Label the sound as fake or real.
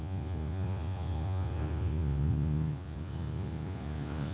fake